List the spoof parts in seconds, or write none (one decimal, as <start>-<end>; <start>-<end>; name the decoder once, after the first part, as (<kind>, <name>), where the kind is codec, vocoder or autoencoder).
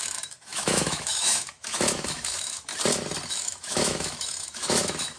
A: 0.0-2.7 (autoencoder, DAC-VAE); 3.3-5.2